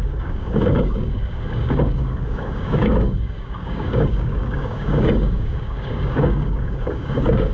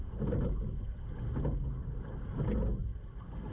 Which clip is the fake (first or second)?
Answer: first